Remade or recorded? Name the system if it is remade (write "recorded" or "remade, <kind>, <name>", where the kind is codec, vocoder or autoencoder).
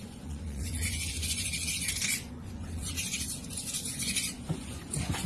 remade, vocoder, Vocos